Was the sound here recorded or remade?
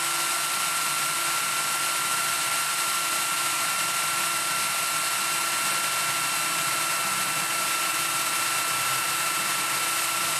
recorded